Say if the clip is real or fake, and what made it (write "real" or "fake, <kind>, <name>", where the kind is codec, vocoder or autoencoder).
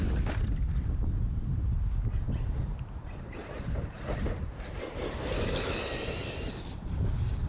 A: real